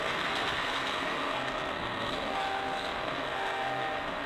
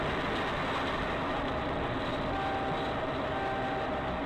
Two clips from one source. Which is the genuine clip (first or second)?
second